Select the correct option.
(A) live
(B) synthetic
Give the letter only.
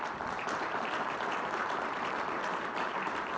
B